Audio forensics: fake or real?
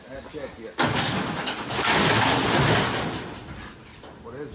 real